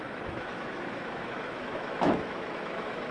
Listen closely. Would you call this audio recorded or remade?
remade